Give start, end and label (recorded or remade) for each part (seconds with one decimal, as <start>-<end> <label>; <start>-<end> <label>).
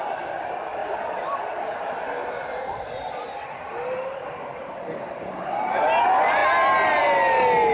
0.0-7.7 recorded